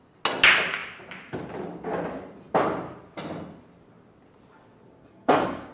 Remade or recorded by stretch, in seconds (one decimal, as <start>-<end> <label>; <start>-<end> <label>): 0.0-5.0 recorded; 5.0-5.7 remade